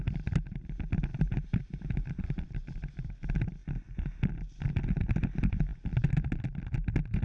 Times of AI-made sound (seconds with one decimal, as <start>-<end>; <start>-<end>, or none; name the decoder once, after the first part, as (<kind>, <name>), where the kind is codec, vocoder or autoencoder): 1.1-3.1 (vocoder, BigVGAN v2); 5.7-6.6